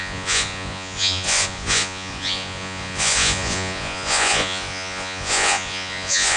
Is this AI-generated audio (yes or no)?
yes